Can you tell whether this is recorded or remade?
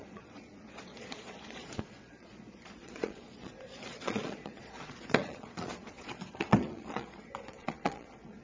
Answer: remade